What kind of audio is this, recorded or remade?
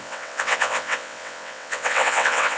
remade